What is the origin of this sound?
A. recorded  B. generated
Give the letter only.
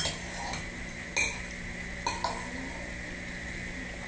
A